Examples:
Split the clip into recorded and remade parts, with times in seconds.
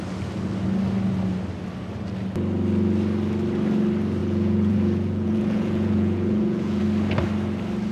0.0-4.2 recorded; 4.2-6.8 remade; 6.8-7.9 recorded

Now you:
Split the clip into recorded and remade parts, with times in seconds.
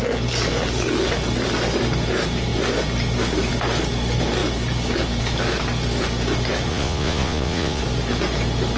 0.0-6.7 recorded; 6.7-7.8 remade; 7.8-8.8 recorded